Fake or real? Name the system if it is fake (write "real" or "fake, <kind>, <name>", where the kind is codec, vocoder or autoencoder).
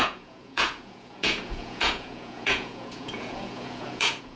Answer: fake, vocoder, Vocos